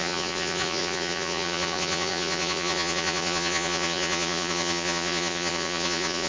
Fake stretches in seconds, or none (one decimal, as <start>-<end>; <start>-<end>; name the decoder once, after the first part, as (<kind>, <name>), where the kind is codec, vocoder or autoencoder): 0.0-6.3 (vocoder, Vocos)